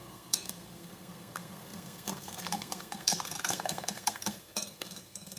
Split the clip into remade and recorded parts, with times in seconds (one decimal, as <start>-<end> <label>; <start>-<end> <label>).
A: 0.0-5.4 remade